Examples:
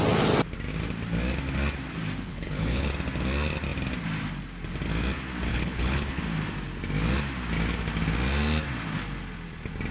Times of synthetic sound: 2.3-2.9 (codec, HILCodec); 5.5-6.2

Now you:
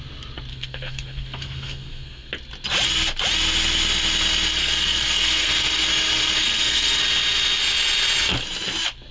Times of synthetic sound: 0.5-2.3 (codec, SNAC); 4.6-5.5; 6.4-7.0

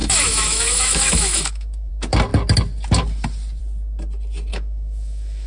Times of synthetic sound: 0.0-1.9 (autoencoder, DAC-VAE); 4.5-5.5

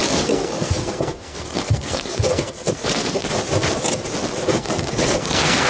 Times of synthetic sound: 0.0-3.2 (codec, SNAC); 4.5-5.7

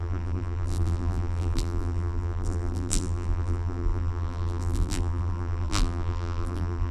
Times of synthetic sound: 0.0-6.9 (vocoder, BigVGAN v2)

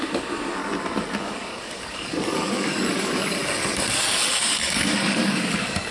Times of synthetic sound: 0.0-0.6 (codec, DAC); 1.2-3.4; 4.4-5.9

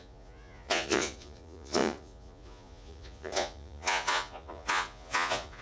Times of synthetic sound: 0.0-5.6 (vocoder, Vocos)

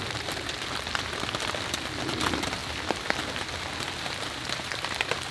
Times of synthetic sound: none